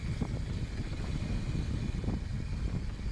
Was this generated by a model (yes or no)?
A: no